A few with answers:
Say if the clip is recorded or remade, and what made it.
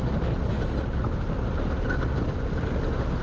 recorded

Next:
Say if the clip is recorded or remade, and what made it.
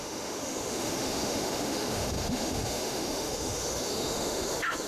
remade, autoencoder, DAC-VAE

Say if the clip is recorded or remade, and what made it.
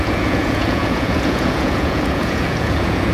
remade, vocoder, Vocos